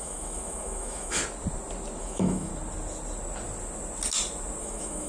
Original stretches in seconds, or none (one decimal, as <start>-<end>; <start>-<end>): 1.2-2.0; 2.5-4.6